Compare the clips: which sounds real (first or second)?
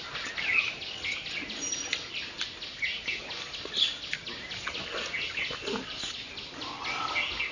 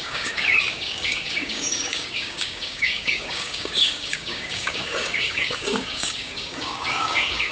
first